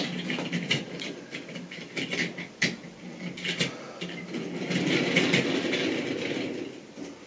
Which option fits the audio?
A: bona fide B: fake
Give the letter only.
A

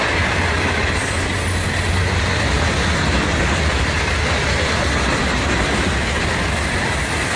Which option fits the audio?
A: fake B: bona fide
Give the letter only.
B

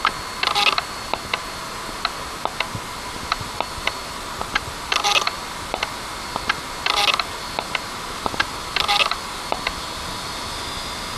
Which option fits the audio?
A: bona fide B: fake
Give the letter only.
A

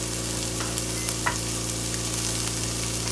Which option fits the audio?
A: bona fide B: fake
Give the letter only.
A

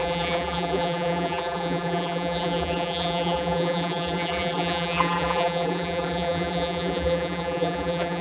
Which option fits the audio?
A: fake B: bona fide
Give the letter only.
A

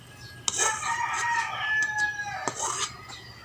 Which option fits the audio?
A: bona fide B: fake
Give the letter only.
A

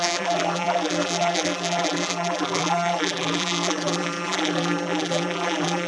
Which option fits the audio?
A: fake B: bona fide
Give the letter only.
A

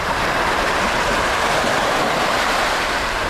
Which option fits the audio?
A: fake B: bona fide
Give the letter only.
A